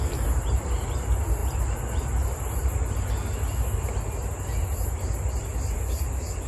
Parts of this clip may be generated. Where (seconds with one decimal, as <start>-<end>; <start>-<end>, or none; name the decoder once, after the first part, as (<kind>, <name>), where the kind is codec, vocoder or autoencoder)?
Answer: none